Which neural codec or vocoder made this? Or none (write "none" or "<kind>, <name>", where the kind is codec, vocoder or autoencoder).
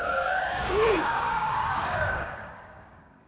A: codec, DAC